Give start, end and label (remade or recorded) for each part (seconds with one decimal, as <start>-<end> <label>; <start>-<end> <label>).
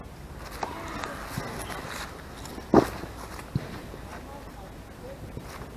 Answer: 0.0-5.8 recorded